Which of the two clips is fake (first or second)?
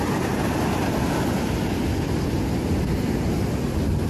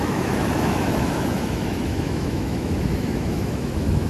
second